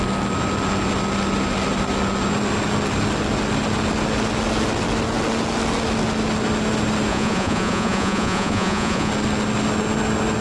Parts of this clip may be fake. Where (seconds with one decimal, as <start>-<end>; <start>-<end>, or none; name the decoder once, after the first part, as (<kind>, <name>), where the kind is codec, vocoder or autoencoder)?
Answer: 7.1-9.1 (vocoder, Vocos)